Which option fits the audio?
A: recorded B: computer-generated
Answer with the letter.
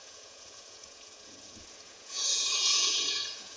B